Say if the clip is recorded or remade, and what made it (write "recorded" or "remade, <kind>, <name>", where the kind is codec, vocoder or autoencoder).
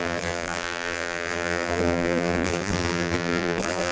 remade, vocoder, BigVGAN v2